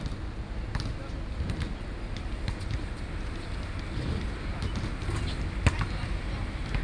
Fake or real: real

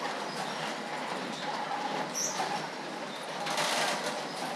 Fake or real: real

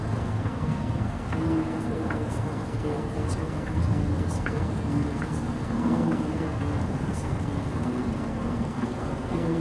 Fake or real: fake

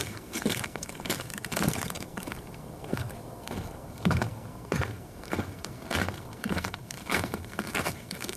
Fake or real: fake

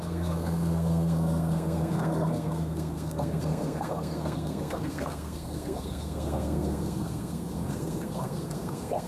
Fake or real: fake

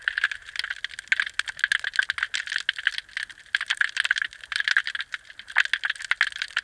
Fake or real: real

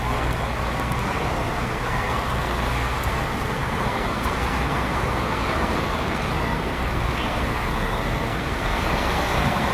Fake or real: fake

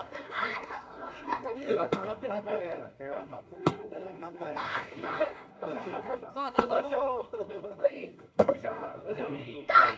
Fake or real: fake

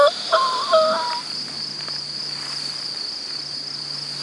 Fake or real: real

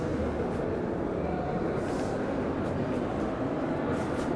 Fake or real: real